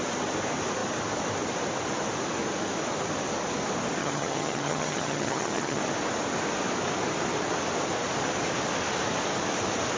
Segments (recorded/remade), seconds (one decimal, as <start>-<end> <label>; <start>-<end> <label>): 0.0-4.0 recorded; 4.0-5.8 remade; 5.8-10.0 recorded